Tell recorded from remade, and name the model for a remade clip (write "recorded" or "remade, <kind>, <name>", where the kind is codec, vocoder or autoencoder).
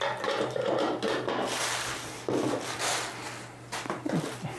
recorded